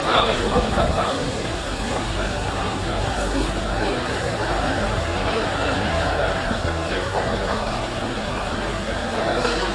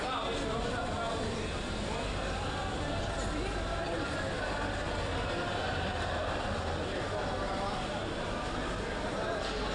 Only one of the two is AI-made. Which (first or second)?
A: first